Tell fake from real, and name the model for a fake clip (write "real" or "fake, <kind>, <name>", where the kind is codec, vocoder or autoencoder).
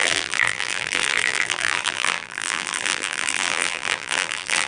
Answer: fake, vocoder, BigVGAN v2